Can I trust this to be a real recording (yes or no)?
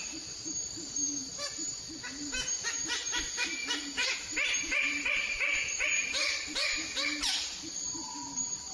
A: no